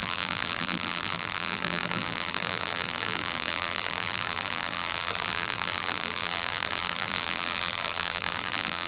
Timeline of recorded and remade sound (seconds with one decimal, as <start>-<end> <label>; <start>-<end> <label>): 0.0-8.9 remade